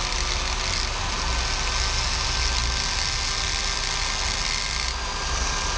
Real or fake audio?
real